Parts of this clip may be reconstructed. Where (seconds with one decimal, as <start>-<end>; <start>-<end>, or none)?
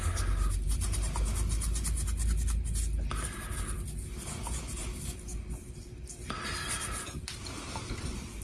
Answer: none